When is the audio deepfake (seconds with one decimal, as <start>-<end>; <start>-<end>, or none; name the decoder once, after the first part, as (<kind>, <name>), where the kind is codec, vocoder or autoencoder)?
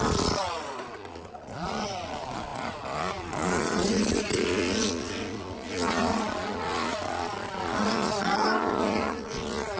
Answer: 0.0-9.8 (vocoder, Vocos)